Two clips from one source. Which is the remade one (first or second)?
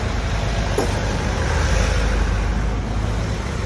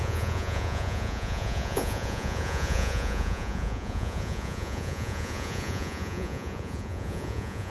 second